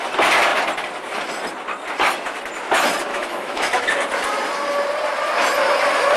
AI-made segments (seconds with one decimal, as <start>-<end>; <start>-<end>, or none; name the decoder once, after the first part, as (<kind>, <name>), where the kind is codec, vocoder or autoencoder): 3.1-3.9 (autoencoder, DAC-VAE)